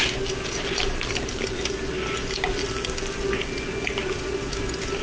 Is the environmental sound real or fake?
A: real